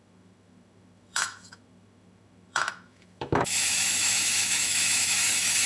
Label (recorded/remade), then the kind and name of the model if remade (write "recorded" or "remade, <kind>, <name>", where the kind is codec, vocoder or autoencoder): remade, autoencoder, DAC-VAE